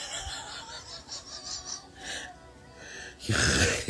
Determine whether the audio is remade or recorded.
recorded